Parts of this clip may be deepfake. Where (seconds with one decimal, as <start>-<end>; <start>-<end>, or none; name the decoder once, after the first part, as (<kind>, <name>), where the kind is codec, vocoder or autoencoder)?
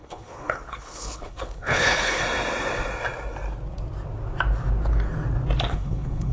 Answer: 0.0-2.2 (codec, HILCodec); 5.7-6.3